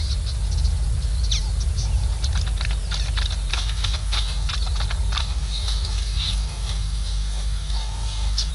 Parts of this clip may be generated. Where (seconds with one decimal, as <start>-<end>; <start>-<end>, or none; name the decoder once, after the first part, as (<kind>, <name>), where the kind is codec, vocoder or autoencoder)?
3.5-4.5 (codec, DAC); 5.2-8.5